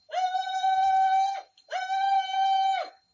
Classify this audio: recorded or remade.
recorded